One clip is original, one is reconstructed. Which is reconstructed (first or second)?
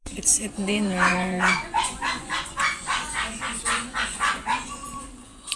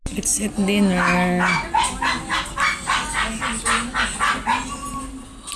first